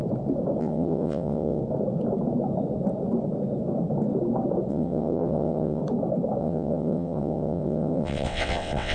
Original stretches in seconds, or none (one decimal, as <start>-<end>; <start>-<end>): 0.0-0.6; 1.6-4.7; 5.8-6.4